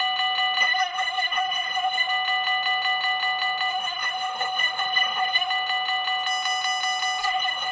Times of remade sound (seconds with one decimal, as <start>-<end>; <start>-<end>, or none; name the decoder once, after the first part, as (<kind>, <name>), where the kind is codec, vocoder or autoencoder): 0.6-2.1 (codec, SNAC); 3.7-5.5; 7.2-7.7